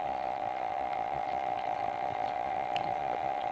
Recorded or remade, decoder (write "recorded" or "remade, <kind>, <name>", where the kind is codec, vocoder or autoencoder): remade, vocoder, Vocos